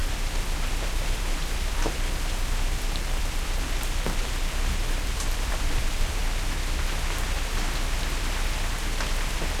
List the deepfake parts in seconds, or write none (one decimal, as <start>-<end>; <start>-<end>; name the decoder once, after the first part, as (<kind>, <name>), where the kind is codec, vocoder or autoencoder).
0.0-6.2 (vocoder, BigVGAN v2)

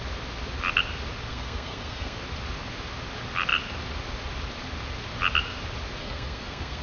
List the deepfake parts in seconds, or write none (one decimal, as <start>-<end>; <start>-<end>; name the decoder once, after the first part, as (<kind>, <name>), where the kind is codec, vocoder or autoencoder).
1.3-2.2 (codec, SNAC); 6.0-6.8

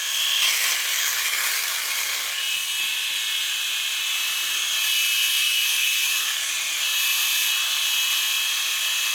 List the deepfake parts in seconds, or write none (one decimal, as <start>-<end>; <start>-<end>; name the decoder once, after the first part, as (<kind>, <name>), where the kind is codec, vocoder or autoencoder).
0.9-2.4 (codec, DAC); 5.4-6.5

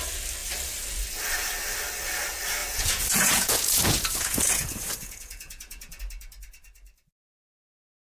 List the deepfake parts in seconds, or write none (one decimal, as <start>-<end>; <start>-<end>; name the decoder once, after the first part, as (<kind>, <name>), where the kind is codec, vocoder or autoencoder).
2.6-6.0 (vocoder, Vocos)

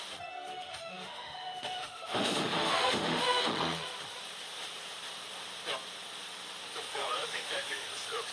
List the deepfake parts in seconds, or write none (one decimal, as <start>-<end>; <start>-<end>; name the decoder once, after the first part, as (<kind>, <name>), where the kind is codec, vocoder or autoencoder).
0.5-3.5 (autoencoder, DAC-VAE); 6.9-7.9

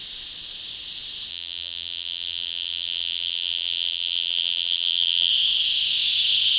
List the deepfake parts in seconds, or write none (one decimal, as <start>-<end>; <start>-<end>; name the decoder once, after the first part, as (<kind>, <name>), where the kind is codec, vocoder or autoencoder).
1.3-5.3 (vocoder, BigVGAN v2)

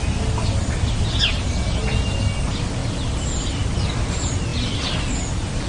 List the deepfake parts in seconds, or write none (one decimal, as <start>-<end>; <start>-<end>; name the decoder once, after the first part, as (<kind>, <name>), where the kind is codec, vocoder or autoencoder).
none